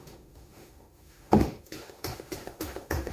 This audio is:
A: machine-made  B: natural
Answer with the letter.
A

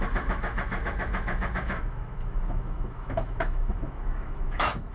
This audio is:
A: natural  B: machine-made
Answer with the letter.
B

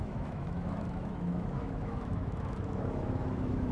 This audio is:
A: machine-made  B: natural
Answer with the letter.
A